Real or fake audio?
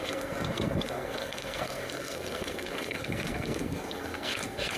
fake